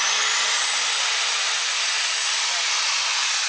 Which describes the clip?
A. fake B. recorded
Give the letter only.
B